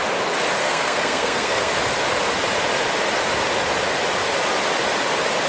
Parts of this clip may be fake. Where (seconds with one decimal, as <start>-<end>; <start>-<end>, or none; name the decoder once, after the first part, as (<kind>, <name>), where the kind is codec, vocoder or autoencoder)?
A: 0.6-1.7 (codec, SNAC)